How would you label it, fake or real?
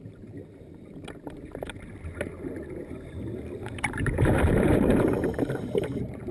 fake